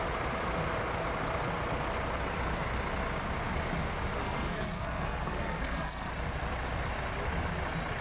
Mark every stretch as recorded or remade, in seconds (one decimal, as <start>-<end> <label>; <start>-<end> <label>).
0.0-4.2 recorded; 4.2-6.1 remade; 6.1-8.0 recorded